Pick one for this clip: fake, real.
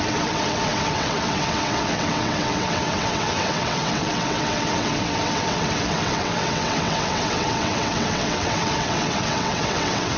fake